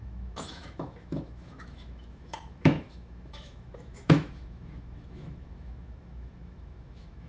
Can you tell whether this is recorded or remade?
remade